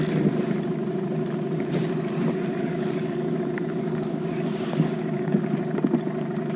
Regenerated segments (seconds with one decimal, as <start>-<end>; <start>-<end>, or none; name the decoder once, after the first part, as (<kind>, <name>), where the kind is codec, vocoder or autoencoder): 2.5-5.4 (codec, DAC)